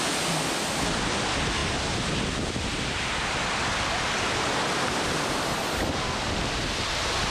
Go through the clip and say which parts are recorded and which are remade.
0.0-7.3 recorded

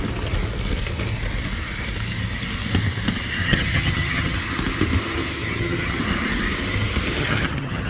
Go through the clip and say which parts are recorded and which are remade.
0.0-3.4 recorded; 3.4-4.4 remade; 4.4-5.4 recorded; 5.4-6.0 remade; 6.0-7.2 recorded; 7.2-7.9 remade

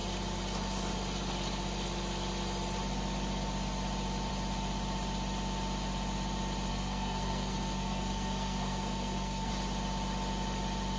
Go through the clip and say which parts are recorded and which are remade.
0.0-6.7 recorded; 6.7-9.5 remade; 9.5-11.0 recorded

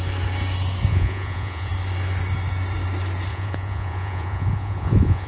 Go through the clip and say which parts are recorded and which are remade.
0.0-0.9 recorded; 0.9-1.7 remade; 1.7-3.3 recorded; 3.3-5.3 remade

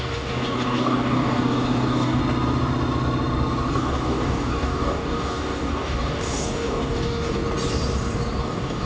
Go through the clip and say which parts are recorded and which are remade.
0.0-2.2 remade; 2.2-3.7 recorded; 3.7-7.4 remade; 7.4-8.4 recorded; 8.4-8.9 remade